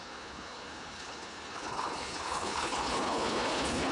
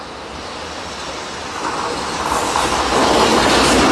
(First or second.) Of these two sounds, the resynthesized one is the first